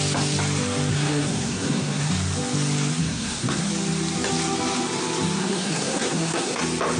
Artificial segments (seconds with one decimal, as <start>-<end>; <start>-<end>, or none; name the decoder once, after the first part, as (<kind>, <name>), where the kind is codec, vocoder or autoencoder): 0.9-2.1 (codec, SNAC); 3.0-3.7; 5.4-6.6